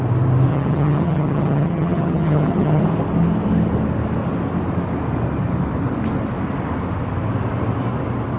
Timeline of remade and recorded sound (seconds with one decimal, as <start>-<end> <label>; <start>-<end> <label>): 0.0-0.5 recorded; 0.5-2.8 remade; 2.8-8.4 recorded